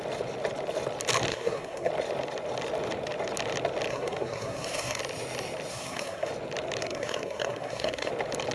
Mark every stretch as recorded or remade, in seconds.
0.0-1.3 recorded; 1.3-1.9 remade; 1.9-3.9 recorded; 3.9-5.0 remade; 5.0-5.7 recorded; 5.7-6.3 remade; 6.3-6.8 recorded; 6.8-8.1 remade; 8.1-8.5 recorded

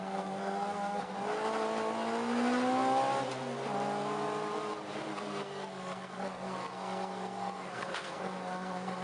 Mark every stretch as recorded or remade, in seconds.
0.0-1.1 remade; 1.1-5.1 recorded; 5.1-9.0 remade

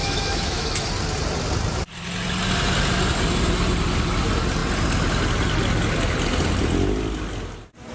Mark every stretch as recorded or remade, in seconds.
0.0-0.9 remade; 0.9-7.9 recorded

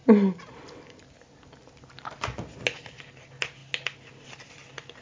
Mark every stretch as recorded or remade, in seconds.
0.0-5.0 recorded